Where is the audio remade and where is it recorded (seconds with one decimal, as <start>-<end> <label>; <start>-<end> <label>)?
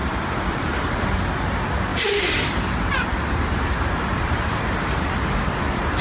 0.0-0.7 remade; 0.7-1.9 recorded; 1.9-5.5 remade; 5.5-6.0 recorded